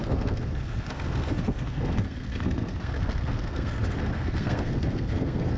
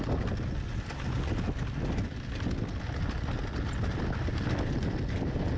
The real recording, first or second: second